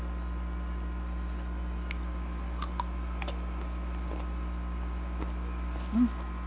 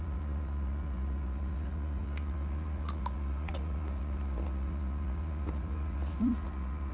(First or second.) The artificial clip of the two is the second